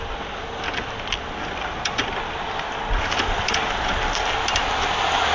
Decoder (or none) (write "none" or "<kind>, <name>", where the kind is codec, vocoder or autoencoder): none